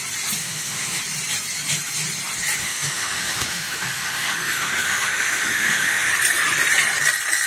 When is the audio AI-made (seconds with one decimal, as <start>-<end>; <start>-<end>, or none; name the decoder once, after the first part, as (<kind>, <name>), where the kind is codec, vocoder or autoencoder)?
0.4-1.0 (autoencoder, DAC-VAE); 2.6-6.1